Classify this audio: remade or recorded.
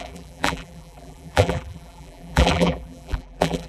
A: remade